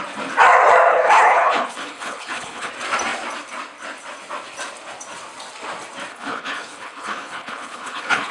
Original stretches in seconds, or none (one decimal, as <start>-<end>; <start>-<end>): 0.0-0.9; 2.7-6.1